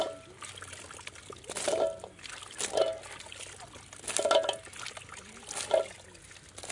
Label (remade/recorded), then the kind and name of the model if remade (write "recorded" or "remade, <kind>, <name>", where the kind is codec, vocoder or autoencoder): recorded